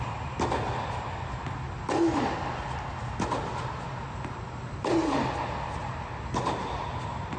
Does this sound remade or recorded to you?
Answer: recorded